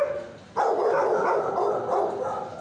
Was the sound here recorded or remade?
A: recorded